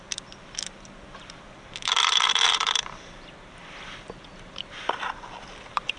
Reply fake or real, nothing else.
fake